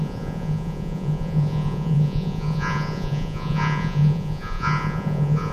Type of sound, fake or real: fake